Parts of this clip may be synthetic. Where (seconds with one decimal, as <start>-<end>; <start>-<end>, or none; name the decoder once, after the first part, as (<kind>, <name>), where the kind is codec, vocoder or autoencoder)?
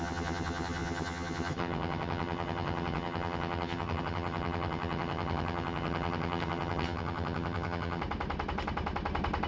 0.0-8.0 (vocoder, HiFi-GAN)